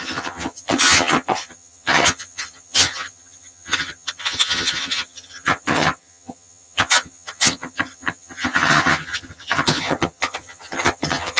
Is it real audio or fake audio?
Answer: fake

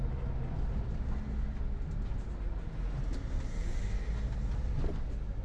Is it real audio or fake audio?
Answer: real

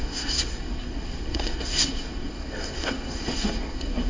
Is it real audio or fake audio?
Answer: fake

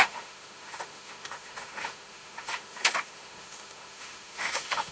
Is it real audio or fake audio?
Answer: fake